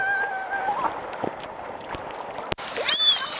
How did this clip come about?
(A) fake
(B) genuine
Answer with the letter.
B